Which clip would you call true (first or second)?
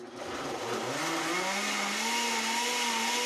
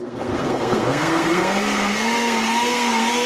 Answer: first